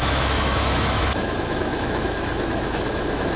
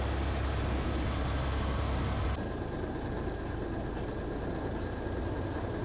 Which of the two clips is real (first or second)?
second